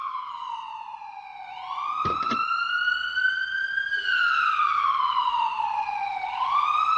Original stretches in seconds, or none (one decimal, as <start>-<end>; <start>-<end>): 0.0-7.0